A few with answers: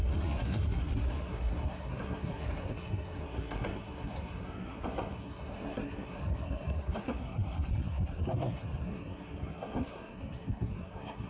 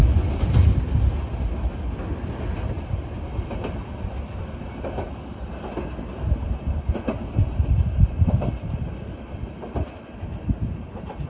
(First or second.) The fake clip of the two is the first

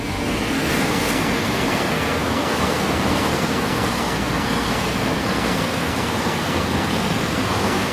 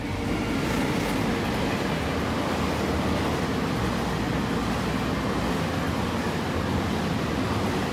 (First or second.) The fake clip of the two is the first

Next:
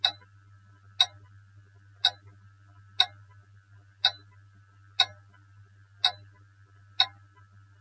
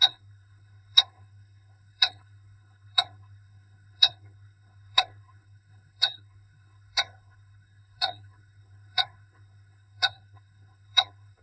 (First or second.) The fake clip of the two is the second